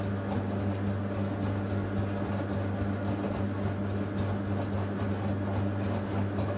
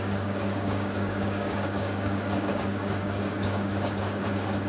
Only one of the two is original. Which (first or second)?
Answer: first